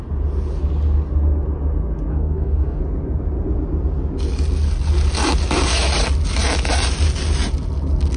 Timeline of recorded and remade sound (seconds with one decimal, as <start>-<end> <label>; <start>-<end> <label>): 0.0-2.1 recorded; 2.1-2.8 remade; 2.8-8.2 recorded